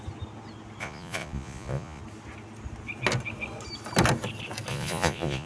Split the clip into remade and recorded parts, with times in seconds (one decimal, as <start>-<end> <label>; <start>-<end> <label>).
0.0-0.8 recorded; 0.8-2.0 remade; 2.0-4.7 recorded; 4.7-5.5 remade